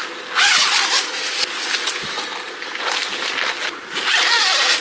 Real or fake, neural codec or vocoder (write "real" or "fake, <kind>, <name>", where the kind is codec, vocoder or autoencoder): real